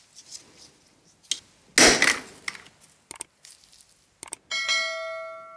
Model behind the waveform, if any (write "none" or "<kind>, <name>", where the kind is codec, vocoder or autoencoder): none